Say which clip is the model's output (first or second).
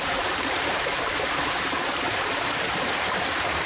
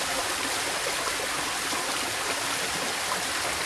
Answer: first